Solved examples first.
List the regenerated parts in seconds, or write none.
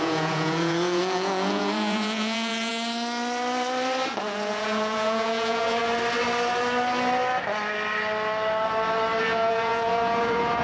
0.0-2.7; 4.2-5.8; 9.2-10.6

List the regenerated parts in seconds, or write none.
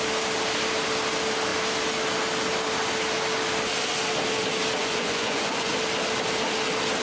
4.8-5.7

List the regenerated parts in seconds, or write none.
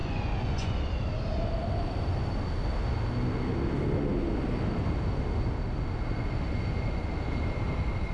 0.0-0.8